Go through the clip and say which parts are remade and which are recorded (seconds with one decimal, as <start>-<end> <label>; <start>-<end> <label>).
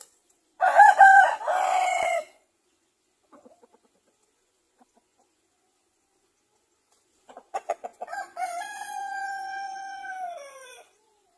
0.0-11.4 remade